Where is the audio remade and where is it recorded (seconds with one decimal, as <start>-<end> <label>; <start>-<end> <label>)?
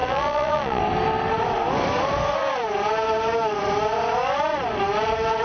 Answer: 0.0-0.8 remade; 0.8-5.4 recorded